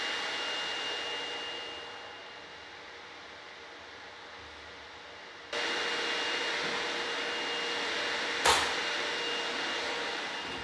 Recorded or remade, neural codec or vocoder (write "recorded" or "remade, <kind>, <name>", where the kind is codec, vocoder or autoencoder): recorded